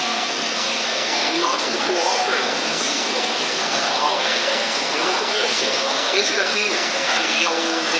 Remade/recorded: remade